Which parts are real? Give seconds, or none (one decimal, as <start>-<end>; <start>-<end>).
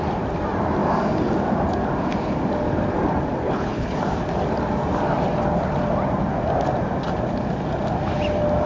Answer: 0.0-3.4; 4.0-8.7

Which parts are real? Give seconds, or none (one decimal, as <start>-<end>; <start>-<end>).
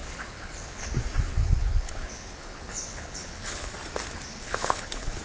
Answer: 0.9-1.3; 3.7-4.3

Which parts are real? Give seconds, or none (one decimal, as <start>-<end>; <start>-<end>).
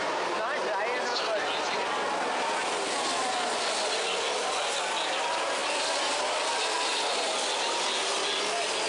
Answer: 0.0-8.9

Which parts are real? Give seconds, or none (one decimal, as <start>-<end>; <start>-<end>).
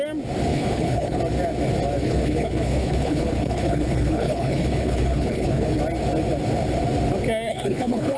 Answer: 0.0-0.5; 1.2-2.0; 5.8-7.5